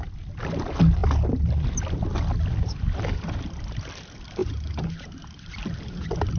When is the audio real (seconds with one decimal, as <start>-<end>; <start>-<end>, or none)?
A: 0.0-6.4